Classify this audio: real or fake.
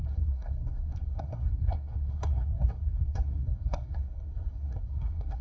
fake